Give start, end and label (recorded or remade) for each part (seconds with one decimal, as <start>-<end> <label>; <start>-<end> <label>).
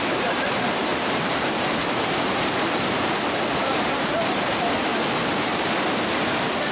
0.0-4.9 remade; 4.9-6.7 recorded